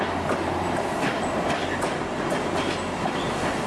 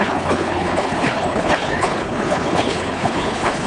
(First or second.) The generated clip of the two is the second